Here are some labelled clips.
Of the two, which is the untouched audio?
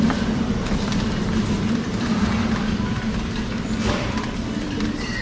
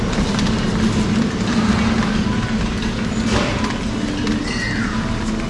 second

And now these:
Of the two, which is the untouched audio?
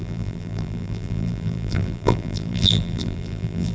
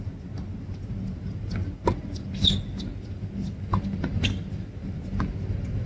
second